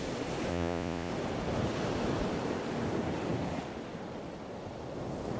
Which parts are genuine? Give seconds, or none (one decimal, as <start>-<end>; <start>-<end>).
0.0-0.5; 1.1-5.4